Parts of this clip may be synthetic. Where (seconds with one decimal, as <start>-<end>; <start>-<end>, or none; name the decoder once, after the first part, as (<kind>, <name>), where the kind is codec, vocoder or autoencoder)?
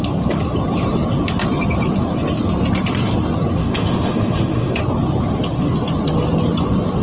3.6-4.8 (autoencoder, DAC-VAE)